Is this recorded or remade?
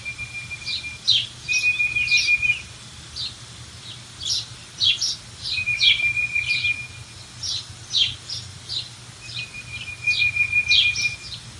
recorded